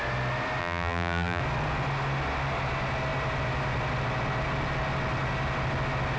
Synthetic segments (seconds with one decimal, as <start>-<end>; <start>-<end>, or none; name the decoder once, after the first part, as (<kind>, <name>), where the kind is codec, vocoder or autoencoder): 0.6-1.4 (vocoder, BigVGAN v2)